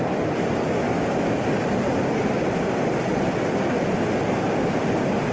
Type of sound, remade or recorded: recorded